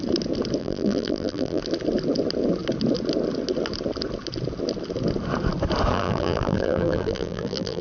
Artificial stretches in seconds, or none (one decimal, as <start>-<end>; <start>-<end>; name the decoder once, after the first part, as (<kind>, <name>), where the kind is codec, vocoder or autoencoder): 0.6-1.6 (vocoder, BigVGAN v2); 5.9-7.8